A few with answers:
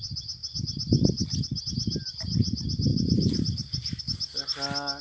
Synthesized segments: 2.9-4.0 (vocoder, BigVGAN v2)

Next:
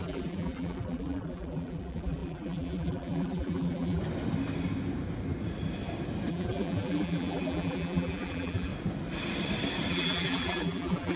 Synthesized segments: 0.0-4.0 (vocoder, BigVGAN v2); 6.3-8.7; 9.9-11.2

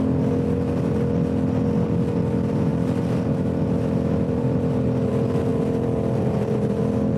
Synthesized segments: 2.7-5.1 (vocoder, BigVGAN v2); 5.5-6.8

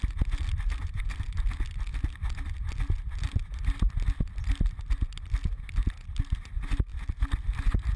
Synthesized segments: none

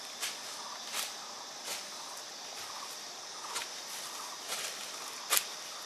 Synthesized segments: 0.9-3.2 (vocoder, BigVGAN v2)

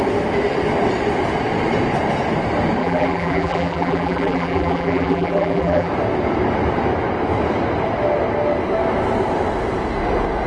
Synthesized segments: 2.8-5.9 (vocoder, BigVGAN v2)